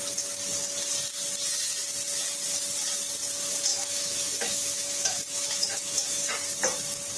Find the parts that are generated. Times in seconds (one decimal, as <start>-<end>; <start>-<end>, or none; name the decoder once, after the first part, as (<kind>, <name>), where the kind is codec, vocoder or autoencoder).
3.7-6.3 (autoencoder, DAC-VAE)